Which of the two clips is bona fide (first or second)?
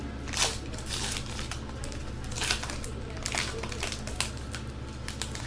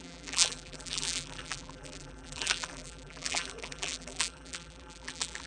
first